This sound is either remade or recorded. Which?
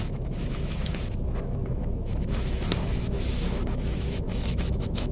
remade